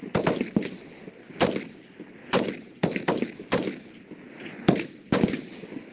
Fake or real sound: real